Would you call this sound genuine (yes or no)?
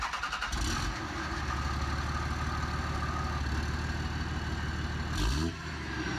yes